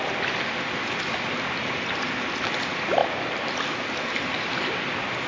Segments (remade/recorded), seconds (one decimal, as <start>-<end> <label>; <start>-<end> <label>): 0.0-5.3 recorded